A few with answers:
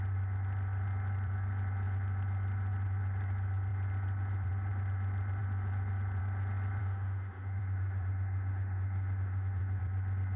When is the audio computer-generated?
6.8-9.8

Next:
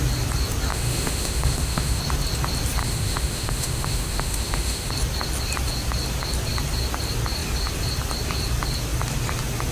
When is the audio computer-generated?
0.7-2.0; 2.8-4.9

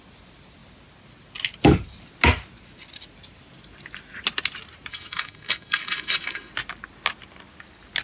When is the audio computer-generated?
4.9-6.5

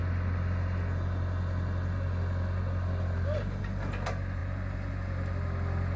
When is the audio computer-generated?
none

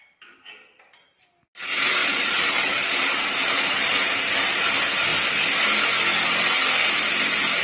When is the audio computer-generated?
none

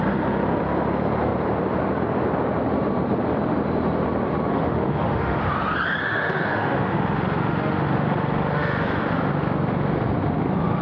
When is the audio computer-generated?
4.5-5.5; 6.0-9.3

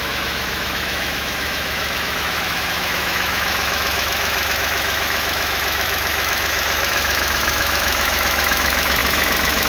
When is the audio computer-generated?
0.0-9.7

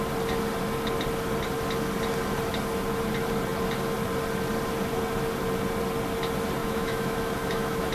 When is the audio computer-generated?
6.6-7.9